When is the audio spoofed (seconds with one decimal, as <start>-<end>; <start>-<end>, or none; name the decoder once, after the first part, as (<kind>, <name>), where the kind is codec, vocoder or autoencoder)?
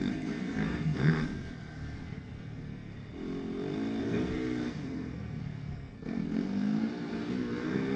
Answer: 0.0-2.9 (codec, SNAC); 4.0-8.0